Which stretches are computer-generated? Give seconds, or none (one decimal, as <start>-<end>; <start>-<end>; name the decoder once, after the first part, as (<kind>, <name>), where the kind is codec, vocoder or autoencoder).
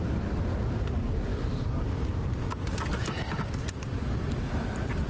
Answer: none